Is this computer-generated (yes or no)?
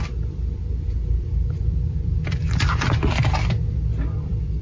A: yes